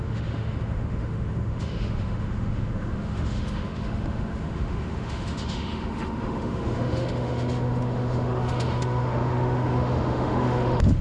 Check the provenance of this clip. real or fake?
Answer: fake